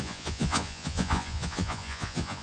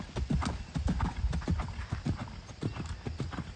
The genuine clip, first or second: second